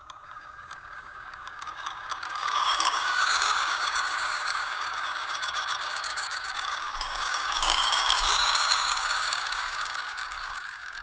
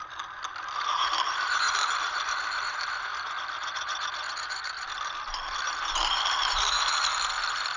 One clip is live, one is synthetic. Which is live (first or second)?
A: second